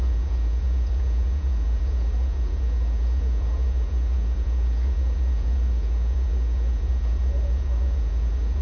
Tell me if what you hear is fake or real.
fake